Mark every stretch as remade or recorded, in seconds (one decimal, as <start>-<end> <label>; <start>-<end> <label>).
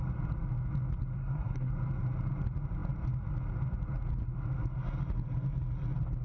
0.0-1.2 recorded; 1.2-1.7 remade; 1.7-6.2 recorded